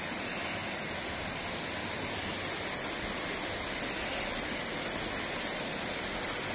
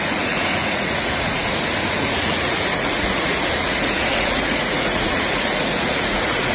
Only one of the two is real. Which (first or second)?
first